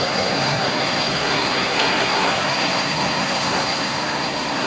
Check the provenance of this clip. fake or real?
fake